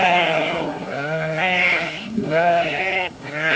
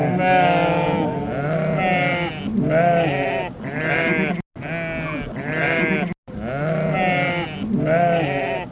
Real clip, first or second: second